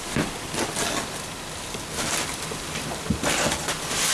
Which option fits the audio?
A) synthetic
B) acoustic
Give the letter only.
B